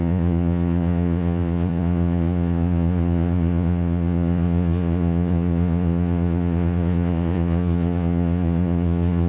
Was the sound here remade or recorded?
remade